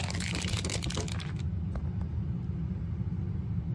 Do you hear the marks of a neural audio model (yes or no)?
no